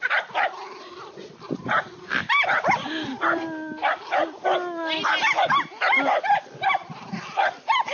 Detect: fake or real real